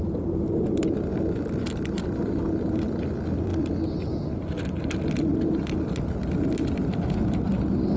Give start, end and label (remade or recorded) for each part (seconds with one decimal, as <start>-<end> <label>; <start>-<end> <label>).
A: 0.0-3.5 remade; 3.5-8.0 recorded